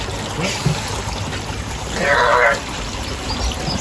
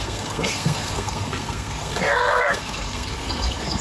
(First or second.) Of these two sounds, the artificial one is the second